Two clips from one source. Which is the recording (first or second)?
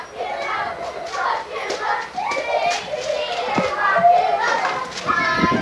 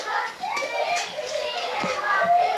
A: first